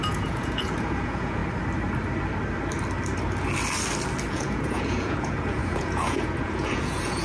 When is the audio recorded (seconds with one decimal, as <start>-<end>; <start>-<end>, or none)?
1.4-4.3